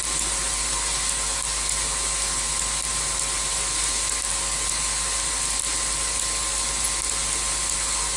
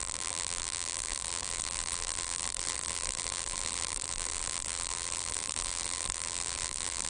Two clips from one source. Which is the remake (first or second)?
second